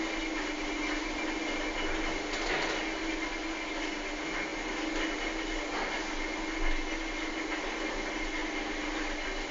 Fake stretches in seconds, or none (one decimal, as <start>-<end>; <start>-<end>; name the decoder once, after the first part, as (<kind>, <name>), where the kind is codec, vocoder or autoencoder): none